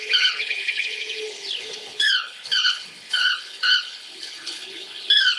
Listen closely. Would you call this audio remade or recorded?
remade